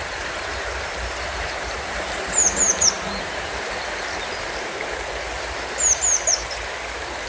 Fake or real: fake